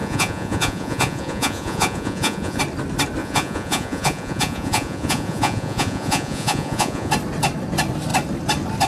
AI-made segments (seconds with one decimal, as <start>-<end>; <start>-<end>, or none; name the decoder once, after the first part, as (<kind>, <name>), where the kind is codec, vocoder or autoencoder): 0.0-2.6 (vocoder, Vocos); 3.2-7.1